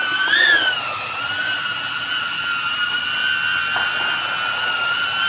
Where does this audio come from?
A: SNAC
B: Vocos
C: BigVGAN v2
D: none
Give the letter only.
D